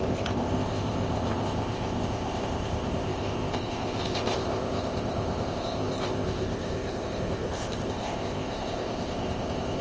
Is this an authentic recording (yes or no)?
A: no